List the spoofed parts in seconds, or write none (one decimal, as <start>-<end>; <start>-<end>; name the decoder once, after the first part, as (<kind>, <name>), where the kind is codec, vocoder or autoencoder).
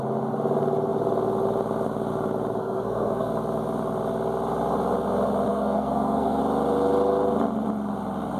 2.6-3.3 (codec, SNAC); 5.5-6.4